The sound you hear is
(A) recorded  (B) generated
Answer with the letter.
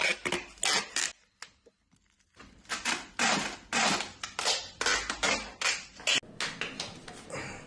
A